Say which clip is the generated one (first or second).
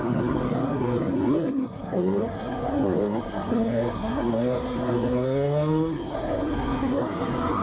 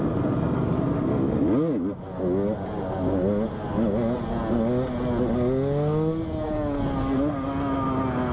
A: first